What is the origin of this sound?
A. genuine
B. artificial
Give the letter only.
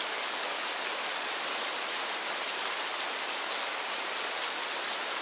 A